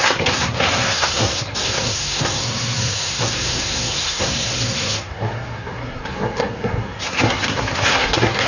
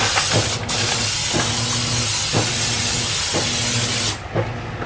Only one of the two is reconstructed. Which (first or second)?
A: first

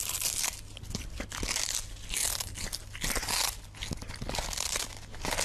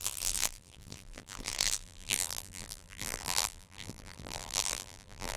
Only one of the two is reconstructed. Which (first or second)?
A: second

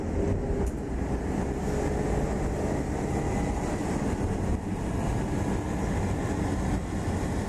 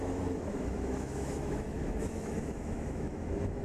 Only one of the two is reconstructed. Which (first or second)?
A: second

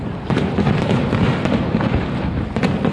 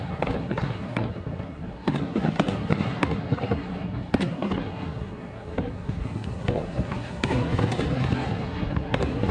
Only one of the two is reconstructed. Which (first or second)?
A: second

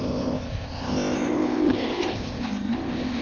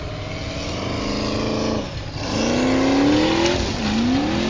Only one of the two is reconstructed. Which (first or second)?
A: first